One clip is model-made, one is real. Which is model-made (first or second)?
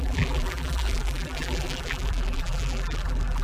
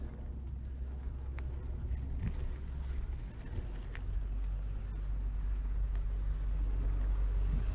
first